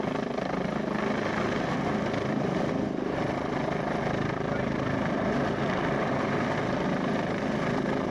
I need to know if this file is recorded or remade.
recorded